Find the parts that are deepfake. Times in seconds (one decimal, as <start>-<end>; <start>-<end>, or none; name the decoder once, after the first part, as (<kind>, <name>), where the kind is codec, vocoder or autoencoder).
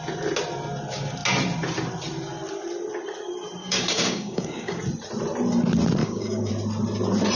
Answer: 3.6-4.8 (codec, DAC); 6.0-6.5